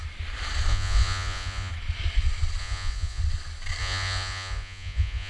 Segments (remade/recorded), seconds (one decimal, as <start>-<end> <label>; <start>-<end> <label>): 0.0-0.7 recorded; 0.7-1.7 remade; 1.7-2.6 recorded; 2.6-3.2 remade; 3.2-3.8 recorded; 3.8-5.3 remade